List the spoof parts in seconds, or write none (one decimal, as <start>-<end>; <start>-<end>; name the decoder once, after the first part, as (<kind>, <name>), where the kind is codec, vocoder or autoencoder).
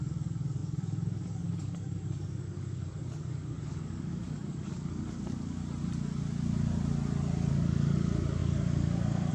0.0-5.6 (codec, DAC); 7.5-9.3